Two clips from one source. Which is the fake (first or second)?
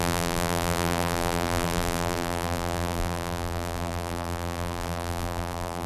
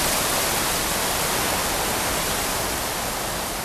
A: first